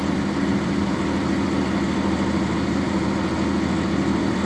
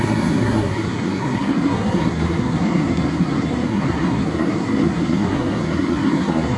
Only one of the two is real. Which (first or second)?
first